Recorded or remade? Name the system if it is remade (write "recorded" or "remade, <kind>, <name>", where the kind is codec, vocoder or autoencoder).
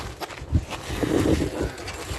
recorded